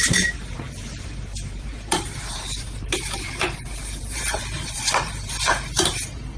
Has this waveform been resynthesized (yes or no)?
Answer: yes